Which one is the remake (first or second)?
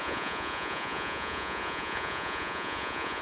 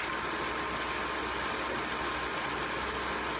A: first